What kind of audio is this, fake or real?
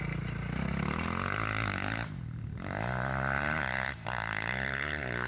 real